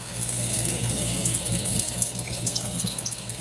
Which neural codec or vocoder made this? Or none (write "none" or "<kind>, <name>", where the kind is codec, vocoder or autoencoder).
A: codec, SNAC